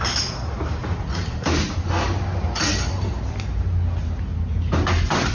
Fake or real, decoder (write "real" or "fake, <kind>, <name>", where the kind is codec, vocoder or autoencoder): real